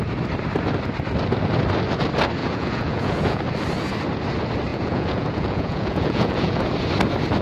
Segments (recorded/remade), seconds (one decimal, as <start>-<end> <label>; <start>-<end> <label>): 0.0-2.4 recorded; 2.4-3.4 remade; 3.4-4.7 recorded; 4.7-6.7 remade; 6.7-7.4 recorded